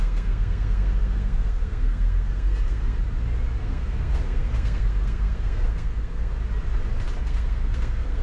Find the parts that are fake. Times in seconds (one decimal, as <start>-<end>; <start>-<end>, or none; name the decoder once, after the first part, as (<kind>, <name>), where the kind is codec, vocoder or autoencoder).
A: 0.0-3.0 (codec, SNAC); 3.6-6.4; 7.2-8.2